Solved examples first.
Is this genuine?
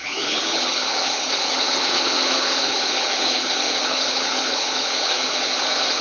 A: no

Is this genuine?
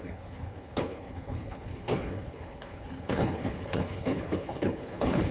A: no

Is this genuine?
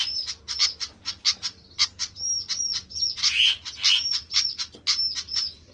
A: yes